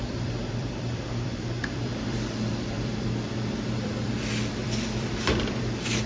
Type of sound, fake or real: fake